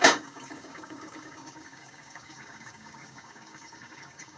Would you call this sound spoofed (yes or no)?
yes